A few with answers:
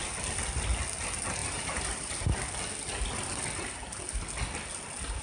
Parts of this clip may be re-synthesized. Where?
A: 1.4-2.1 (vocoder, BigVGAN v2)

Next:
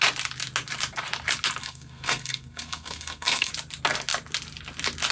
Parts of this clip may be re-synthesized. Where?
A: 1.6-3.5 (codec, SNAC)

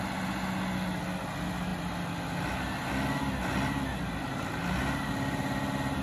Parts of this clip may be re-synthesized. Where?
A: none

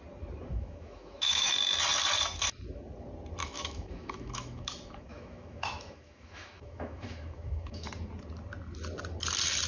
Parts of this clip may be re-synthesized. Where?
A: 0.5-1.5 (autoencoder, DAC-VAE); 3.4-7.9